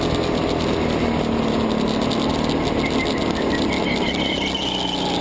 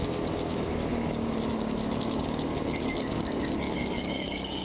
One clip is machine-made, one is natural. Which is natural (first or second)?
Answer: first